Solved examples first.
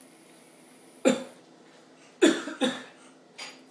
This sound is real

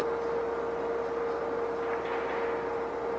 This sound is real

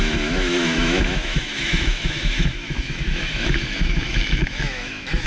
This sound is fake